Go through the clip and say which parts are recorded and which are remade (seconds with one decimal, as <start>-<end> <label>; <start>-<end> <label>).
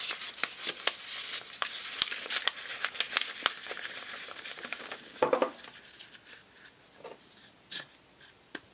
0.0-4.7 recorded; 4.7-5.5 remade; 5.5-8.7 recorded